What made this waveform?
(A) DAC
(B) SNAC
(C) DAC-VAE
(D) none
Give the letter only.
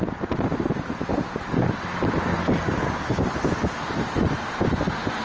D